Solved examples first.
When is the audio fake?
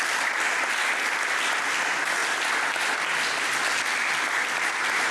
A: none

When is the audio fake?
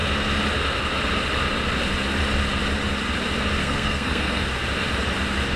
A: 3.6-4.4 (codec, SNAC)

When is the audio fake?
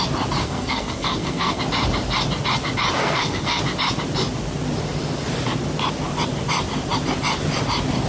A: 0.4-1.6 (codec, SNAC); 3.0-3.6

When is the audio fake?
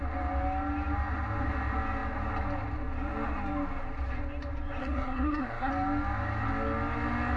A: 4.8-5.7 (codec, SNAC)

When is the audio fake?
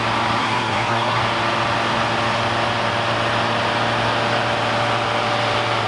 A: 0.4-1.2 (codec, SNAC)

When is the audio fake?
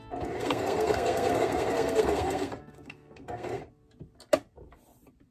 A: 0.4-3.6 (codec, SNAC)